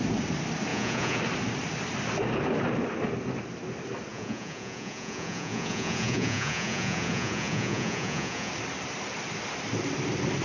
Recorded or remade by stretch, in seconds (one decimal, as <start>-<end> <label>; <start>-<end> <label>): 0.0-0.7 recorded; 0.7-1.2 remade; 1.2-4.1 recorded; 4.1-8.5 remade; 8.5-10.4 recorded